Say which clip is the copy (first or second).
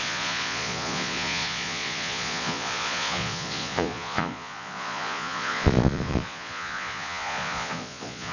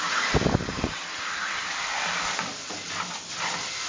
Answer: first